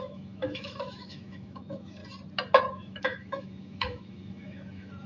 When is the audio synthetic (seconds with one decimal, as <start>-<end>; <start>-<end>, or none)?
0.0-2.0; 2.6-5.1